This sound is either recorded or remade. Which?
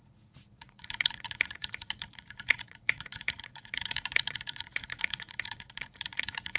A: remade